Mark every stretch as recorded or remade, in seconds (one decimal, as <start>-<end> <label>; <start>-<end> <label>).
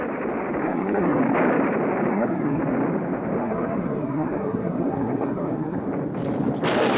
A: 0.0-0.6 recorded; 0.6-1.2 remade; 1.2-2.1 recorded; 2.1-2.6 remade; 2.6-3.4 recorded; 3.4-5.8 remade; 5.8-7.0 recorded